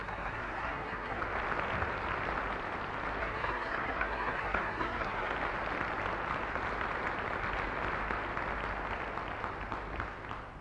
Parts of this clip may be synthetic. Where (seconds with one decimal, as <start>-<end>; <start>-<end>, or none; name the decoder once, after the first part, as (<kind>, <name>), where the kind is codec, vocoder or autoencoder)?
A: 0.0-1.2 (codec, SNAC); 3.2-5.3